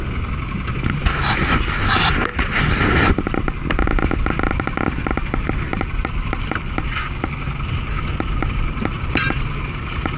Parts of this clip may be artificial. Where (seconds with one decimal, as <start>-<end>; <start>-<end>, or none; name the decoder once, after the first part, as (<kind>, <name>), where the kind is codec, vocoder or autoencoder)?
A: none